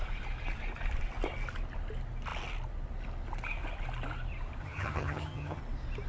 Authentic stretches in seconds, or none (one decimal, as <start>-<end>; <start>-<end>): 0.0-4.6; 5.6-6.1